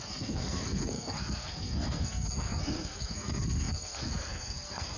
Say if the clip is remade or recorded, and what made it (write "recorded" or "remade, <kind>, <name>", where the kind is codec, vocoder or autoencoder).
remade, codec, SNAC